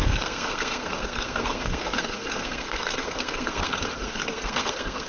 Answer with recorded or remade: remade